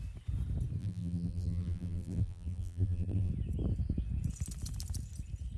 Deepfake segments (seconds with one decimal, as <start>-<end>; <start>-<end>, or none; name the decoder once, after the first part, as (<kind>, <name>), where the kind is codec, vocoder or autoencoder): 0.8-3.3 (vocoder, BigVGAN v2)

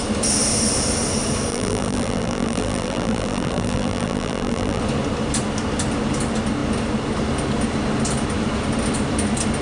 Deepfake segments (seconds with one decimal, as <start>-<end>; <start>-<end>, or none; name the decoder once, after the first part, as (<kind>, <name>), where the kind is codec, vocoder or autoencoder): 1.5-4.8 (vocoder, BigVGAN v2)

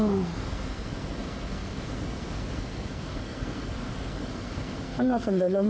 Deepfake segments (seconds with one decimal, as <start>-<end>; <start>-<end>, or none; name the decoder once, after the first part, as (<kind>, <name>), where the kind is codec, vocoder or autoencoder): 0.0-5.7 (codec, SNAC)